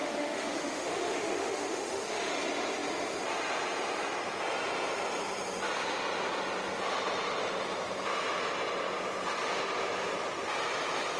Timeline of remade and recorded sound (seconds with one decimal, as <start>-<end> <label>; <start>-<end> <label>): 0.0-2.3 remade; 2.3-11.2 recorded